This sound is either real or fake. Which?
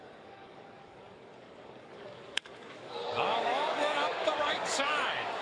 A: fake